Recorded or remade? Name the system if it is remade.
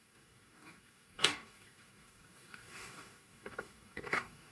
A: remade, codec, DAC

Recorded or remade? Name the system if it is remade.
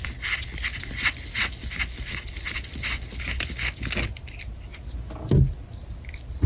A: recorded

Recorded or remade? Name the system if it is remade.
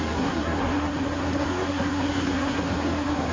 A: remade, codec, SNAC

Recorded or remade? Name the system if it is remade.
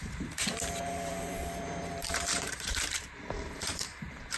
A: remade, vocoder, BigVGAN v2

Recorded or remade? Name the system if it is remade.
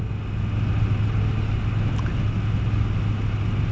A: recorded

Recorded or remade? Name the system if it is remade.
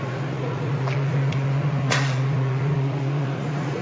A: remade, vocoder, Vocos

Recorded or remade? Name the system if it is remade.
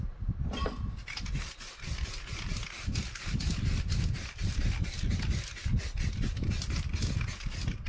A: recorded